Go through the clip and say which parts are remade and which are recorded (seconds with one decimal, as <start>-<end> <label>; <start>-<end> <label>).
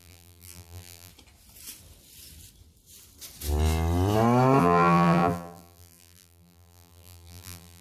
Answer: 0.0-1.1 remade; 1.1-4.6 recorded; 4.6-7.8 remade